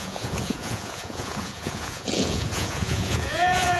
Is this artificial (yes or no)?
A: yes